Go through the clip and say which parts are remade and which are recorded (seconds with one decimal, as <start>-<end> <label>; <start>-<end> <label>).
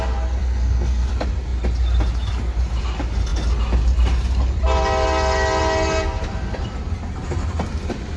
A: 0.0-0.4 recorded; 0.4-1.1 remade; 1.1-8.2 recorded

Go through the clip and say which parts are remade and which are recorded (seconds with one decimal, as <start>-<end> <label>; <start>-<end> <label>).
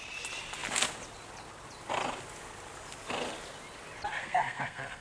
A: 0.0-4.2 recorded; 4.2-5.0 remade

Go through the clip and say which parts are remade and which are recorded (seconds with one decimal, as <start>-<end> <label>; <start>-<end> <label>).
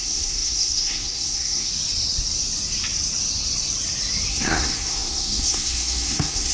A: 0.0-1.7 remade; 1.7-4.3 recorded; 4.3-6.5 remade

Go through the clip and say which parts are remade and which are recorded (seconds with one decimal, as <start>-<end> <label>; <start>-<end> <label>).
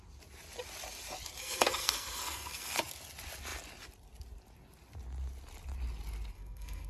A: 0.0-1.4 recorded; 1.4-2.8 remade; 2.8-6.3 recorded; 6.3-6.9 remade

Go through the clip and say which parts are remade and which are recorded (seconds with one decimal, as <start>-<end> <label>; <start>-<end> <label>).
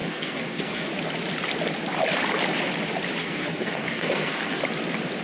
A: 0.0-0.9 remade; 0.9-3.2 recorded; 3.2-4.6 remade; 4.6-5.2 recorded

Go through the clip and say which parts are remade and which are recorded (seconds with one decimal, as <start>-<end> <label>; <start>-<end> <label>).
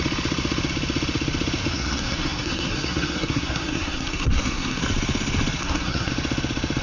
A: 0.0-1.7 recorded; 1.7-4.8 remade; 4.8-5.6 recorded; 5.6-6.1 remade; 6.1-6.8 recorded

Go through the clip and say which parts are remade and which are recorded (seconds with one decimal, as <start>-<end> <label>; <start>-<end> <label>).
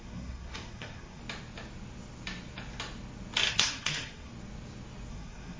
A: 0.0-1.2 remade; 1.2-3.5 recorded; 3.5-4.3 remade; 4.3-5.1 recorded; 5.1-5.6 remade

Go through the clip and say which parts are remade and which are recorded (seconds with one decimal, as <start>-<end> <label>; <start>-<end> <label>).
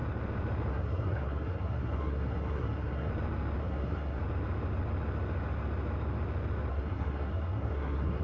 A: 0.0-0.7 recorded; 0.7-3.1 remade; 3.1-3.6 recorded; 3.6-4.2 remade; 4.2-6.7 recorded; 6.7-8.2 remade